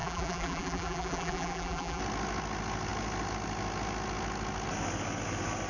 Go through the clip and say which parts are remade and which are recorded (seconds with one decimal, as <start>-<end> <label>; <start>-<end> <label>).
0.0-2.0 remade; 2.0-5.7 recorded